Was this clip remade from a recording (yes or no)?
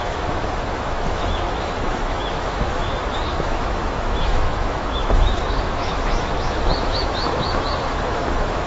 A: yes